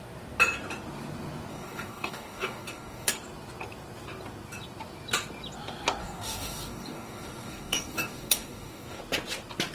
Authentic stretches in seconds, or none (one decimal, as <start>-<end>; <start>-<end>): 0.0-1.5; 3.1-6.0; 9.0-9.7